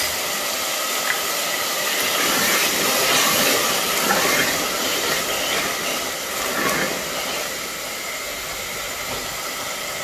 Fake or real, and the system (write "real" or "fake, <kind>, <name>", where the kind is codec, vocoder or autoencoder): real